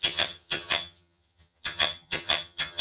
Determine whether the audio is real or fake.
fake